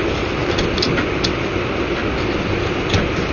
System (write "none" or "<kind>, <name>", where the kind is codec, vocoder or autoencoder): none